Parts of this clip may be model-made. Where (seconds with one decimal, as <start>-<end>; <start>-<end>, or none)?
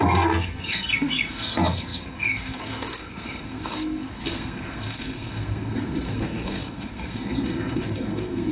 0.0-8.5